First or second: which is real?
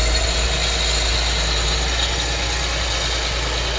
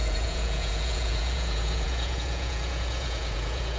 first